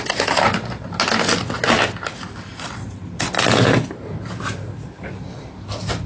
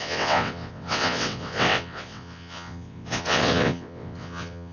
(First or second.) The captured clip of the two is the first